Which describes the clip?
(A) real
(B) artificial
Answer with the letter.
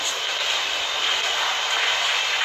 A